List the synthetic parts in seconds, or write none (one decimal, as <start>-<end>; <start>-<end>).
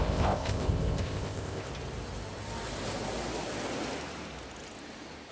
0.0-1.7